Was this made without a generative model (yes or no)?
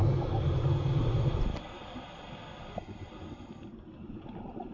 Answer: yes